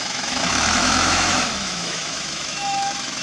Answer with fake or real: fake